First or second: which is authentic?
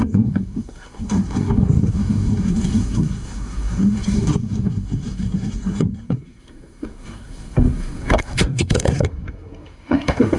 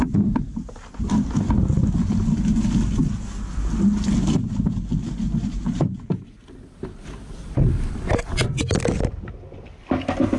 second